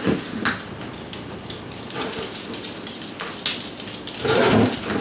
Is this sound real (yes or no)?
yes